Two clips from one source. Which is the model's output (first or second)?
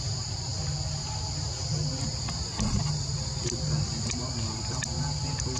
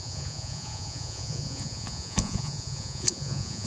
second